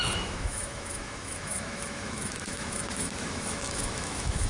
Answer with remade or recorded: remade